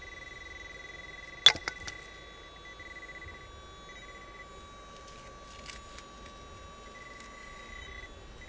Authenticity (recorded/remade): recorded